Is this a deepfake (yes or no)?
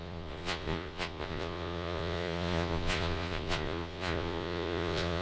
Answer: yes